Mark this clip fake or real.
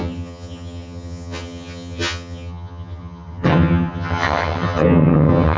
fake